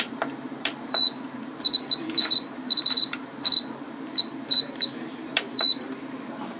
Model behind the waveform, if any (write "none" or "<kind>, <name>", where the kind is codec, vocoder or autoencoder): vocoder, BigVGAN v2